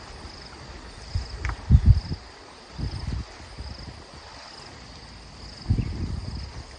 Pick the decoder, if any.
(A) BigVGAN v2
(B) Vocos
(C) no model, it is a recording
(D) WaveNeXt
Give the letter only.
C